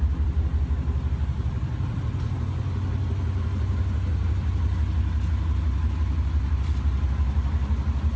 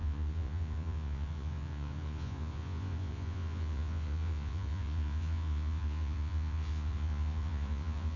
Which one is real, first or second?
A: first